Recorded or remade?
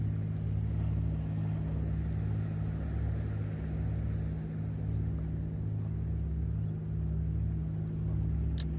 recorded